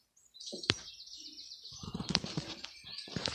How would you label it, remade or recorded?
remade